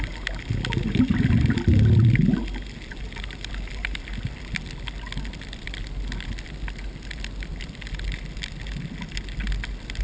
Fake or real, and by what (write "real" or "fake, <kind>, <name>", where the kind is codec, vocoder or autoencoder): real